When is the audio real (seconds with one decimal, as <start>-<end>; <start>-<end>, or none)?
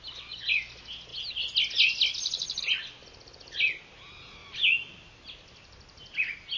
0.0-6.6